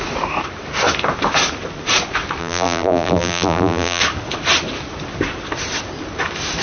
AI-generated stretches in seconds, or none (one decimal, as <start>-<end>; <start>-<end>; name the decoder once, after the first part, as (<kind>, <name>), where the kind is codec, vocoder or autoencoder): 2.4-4.0 (vocoder, BigVGAN v2)